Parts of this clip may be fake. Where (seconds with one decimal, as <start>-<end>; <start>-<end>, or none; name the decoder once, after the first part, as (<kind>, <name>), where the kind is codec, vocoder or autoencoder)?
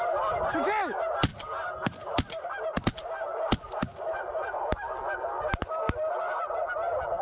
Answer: none